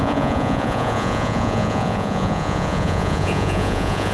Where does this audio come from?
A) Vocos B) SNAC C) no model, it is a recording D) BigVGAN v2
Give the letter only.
A